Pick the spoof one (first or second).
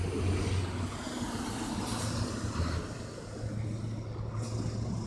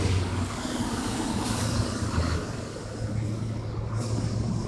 second